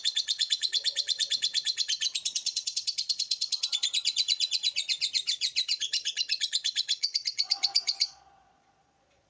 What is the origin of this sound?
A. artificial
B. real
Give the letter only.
A